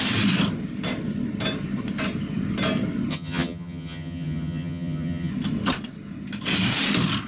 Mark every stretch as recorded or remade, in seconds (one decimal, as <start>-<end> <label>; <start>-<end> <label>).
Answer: 0.0-3.1 recorded; 3.1-5.3 remade; 5.3-7.3 recorded